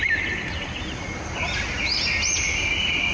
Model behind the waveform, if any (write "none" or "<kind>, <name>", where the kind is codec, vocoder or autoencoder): none